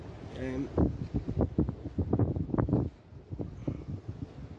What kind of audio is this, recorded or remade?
recorded